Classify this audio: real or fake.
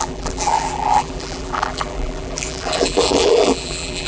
fake